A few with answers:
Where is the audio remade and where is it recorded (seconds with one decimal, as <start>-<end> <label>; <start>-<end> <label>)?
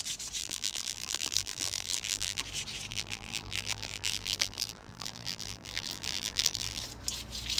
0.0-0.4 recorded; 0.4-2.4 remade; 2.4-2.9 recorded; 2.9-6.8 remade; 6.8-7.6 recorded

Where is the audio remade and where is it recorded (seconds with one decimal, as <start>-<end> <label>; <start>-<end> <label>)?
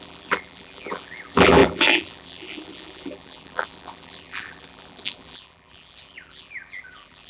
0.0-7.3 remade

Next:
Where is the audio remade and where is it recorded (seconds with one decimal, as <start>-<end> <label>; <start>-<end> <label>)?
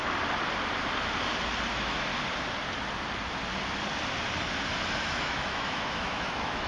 0.0-1.7 recorded; 1.7-2.1 remade; 2.1-5.0 recorded; 5.0-6.7 remade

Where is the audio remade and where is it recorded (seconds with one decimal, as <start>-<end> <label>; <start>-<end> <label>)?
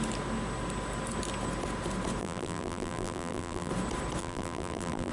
0.0-2.2 recorded; 2.2-3.7 remade; 3.7-4.2 recorded; 4.2-5.1 remade